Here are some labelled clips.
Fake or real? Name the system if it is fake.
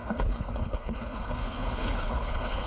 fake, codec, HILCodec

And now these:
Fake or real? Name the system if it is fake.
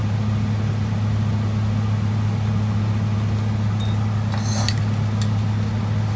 real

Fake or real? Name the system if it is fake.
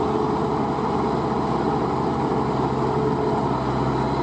real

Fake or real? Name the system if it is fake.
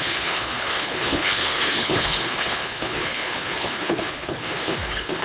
fake, codec, HILCodec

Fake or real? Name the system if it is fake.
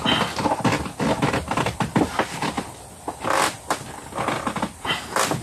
real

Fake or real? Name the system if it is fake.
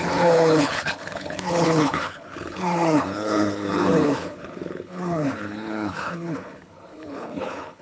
fake, codec, HILCodec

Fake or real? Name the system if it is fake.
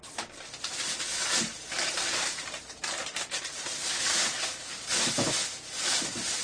real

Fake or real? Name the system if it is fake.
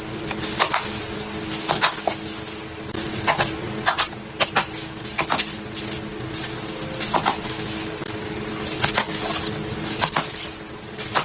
real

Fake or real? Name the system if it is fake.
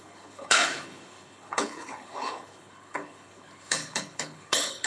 fake, codec, HILCodec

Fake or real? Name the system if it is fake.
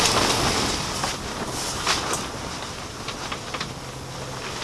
real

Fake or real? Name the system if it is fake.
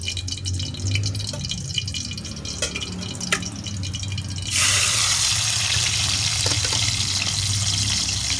real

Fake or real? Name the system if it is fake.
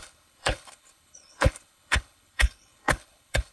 fake, codec, HILCodec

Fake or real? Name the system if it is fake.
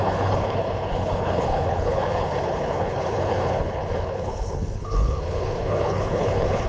fake, codec, HILCodec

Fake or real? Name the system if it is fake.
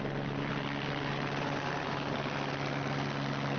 real